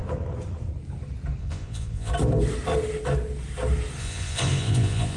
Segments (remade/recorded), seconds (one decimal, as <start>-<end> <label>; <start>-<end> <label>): 0.0-1.4 recorded; 1.4-2.1 remade; 2.1-4.0 recorded; 4.0-5.2 remade